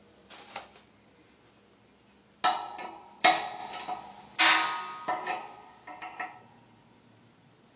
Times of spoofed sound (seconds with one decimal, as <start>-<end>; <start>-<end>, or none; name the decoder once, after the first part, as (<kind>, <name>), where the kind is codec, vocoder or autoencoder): none